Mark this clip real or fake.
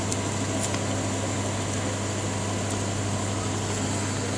real